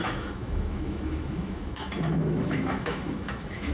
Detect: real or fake fake